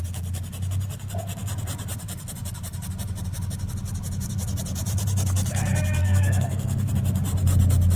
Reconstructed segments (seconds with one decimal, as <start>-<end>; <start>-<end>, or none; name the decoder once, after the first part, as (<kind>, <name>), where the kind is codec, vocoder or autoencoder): 6.0-6.9 (codec, SNAC)